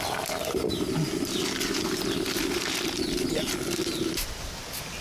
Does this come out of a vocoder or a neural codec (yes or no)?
no